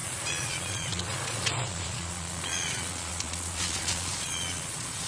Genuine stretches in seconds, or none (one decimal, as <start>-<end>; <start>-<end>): none